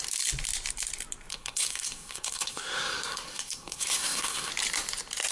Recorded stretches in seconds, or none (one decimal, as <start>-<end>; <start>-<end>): 0.0-1.3; 4.5-5.3